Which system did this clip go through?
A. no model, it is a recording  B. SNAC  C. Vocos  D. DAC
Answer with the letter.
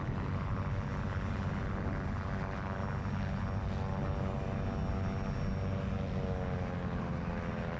A